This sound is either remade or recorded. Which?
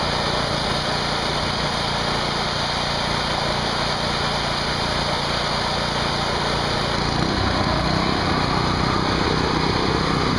recorded